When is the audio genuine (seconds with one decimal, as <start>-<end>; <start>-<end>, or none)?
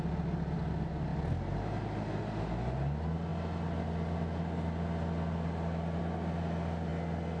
0.0-7.4